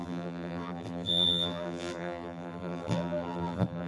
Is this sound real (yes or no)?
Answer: no